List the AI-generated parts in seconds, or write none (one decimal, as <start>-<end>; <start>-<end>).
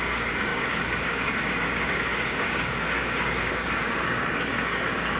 0.0-5.2